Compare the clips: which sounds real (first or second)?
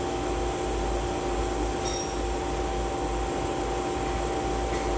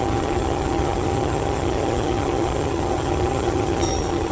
first